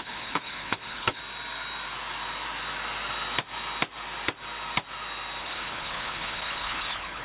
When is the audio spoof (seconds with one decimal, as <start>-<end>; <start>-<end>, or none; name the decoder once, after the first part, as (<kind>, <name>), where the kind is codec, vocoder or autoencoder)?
0.0-1.2 (codec, HILCodec); 5.4-7.2